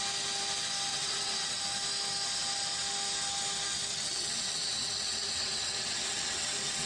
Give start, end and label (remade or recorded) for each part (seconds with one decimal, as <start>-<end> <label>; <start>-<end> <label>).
0.0-0.9 recorded; 0.9-1.6 remade; 1.6-3.9 recorded; 3.9-6.9 remade